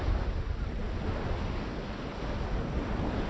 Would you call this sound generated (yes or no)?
no